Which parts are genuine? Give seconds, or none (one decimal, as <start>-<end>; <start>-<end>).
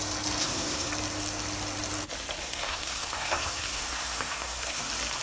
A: 0.0-0.4; 0.9-2.4; 4.8-5.2